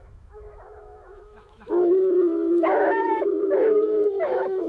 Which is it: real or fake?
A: fake